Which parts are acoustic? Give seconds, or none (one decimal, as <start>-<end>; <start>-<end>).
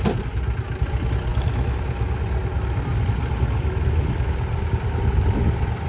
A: 0.0-5.9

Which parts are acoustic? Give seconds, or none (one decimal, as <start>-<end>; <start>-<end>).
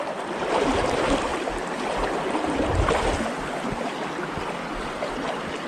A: 0.0-5.7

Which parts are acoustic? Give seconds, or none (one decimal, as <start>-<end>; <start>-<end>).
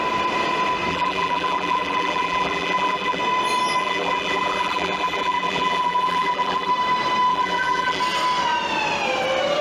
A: 0.0-0.9; 3.2-3.8; 6.7-7.3; 8.0-9.6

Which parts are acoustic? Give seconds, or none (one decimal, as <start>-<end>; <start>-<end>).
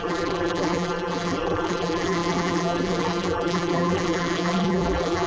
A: none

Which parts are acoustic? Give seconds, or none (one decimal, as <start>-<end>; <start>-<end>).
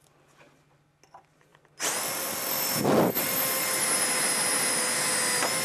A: 0.0-5.6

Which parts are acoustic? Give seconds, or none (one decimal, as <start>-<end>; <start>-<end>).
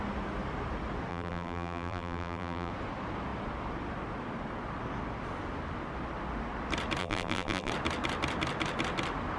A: 0.0-1.1; 2.7-7.0; 7.7-9.4